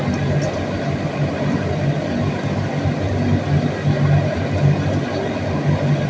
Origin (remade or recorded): recorded